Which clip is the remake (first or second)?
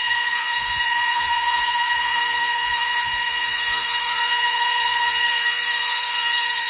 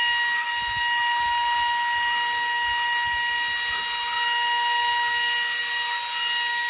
first